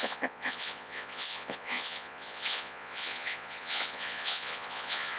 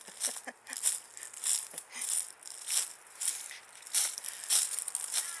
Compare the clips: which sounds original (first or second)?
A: second